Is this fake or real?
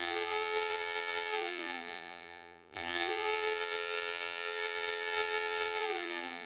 fake